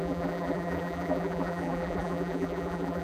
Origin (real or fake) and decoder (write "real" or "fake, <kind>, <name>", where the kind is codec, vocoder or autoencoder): fake, vocoder, BigVGAN v2